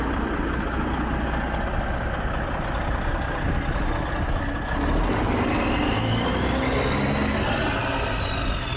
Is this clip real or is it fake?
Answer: real